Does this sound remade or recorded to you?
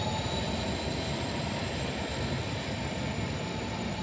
recorded